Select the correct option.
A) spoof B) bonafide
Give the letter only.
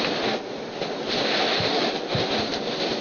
B